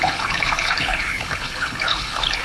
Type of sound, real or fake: fake